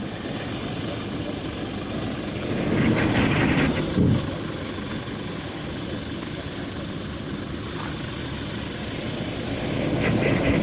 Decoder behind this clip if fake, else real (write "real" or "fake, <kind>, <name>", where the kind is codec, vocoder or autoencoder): real